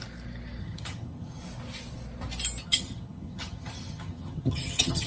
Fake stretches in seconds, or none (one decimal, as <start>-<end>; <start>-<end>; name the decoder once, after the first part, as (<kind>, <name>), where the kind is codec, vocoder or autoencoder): 0.6-1.4 (vocoder, HiFi-GAN); 2.6-5.1